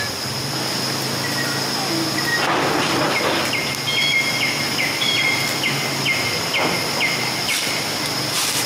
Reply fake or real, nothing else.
real